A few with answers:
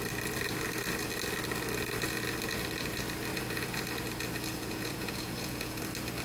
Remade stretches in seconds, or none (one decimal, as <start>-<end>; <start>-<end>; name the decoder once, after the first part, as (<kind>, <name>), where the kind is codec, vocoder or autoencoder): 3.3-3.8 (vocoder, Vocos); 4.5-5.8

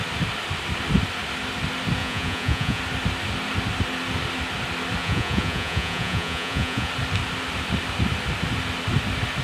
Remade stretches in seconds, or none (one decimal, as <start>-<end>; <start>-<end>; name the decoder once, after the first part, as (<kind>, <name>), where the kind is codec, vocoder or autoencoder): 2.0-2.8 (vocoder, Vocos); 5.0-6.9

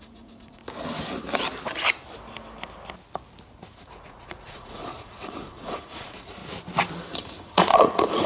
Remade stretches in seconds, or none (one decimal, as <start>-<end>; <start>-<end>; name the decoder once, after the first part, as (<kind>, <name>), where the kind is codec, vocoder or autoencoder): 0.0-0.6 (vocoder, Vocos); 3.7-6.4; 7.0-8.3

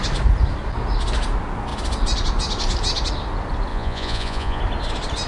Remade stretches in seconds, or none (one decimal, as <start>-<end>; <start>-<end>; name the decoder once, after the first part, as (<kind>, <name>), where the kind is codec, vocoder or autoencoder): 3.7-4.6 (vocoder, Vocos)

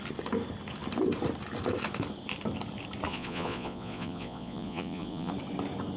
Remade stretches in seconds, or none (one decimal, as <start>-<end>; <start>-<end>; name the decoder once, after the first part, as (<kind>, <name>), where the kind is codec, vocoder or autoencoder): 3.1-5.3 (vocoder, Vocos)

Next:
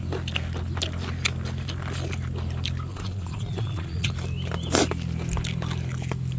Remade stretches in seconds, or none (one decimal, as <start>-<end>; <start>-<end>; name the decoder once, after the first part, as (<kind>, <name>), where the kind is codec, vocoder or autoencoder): 2.9-4.1 (vocoder, Vocos)

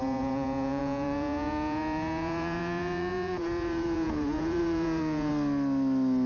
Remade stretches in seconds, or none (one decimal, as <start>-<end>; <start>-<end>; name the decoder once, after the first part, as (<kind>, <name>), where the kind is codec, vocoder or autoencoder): 0.0-5.3 (vocoder, Vocos)